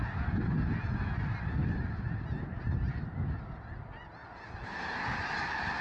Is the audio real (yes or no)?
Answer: yes